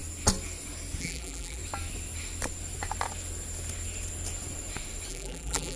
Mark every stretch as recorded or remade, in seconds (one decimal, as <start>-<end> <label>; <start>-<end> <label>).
0.0-1.0 recorded; 1.0-1.6 remade; 1.6-5.1 recorded; 5.1-5.8 remade